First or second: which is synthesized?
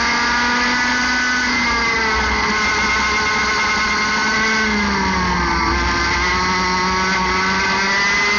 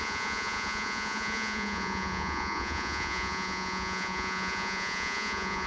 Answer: second